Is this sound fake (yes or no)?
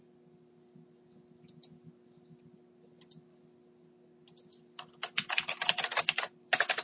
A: no